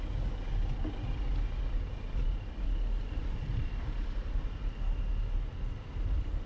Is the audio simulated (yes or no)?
no